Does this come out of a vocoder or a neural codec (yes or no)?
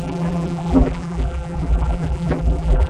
yes